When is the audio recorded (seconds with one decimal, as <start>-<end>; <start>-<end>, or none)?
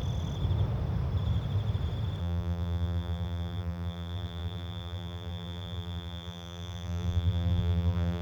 0.0-2.2